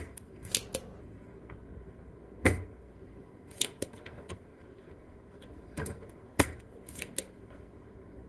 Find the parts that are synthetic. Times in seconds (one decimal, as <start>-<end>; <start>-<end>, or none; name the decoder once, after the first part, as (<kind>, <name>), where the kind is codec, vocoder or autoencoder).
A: 0.0-0.5 (codec, SNAC); 1.0-8.3